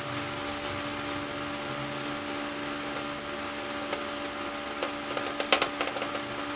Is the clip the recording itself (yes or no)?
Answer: yes